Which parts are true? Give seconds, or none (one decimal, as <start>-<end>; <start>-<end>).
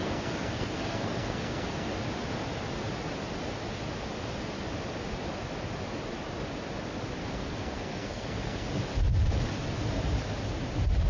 1.9-7.2; 8.7-11.1